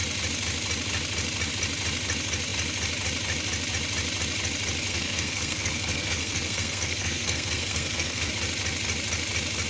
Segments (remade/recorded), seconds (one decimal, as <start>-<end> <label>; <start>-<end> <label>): 0.0-4.9 recorded; 4.9-8.3 remade; 8.3-9.7 recorded